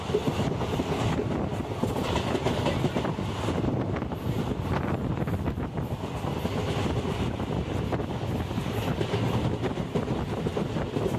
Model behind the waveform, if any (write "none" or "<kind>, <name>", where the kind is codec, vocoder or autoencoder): none